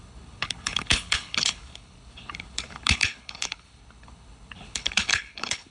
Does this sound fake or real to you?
fake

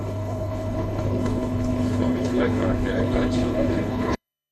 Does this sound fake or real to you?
fake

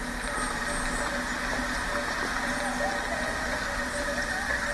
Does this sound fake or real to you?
real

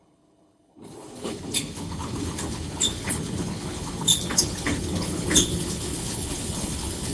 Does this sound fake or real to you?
fake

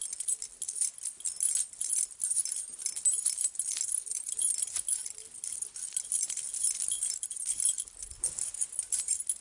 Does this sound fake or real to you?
real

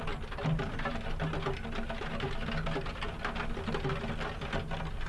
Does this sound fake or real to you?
real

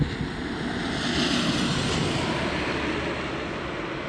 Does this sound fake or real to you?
real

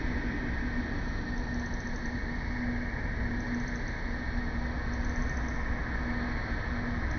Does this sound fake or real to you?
real